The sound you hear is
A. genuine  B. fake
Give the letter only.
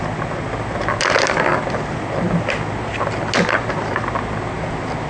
A